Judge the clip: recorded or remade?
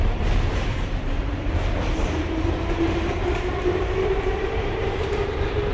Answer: remade